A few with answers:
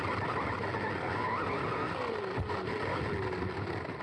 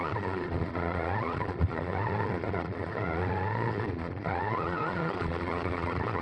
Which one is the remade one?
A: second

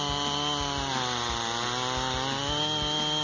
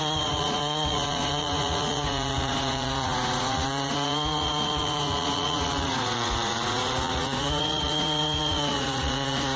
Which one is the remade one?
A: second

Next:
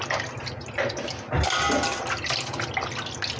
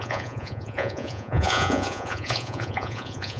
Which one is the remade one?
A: second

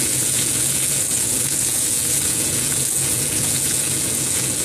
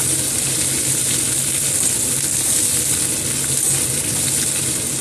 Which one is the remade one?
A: first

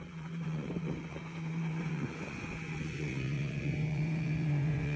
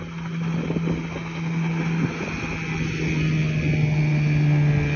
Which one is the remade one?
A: first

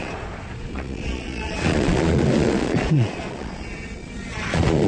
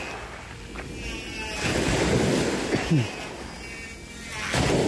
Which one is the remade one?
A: first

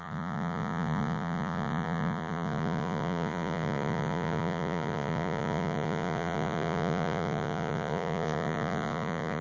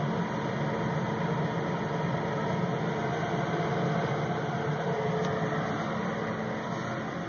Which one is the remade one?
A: first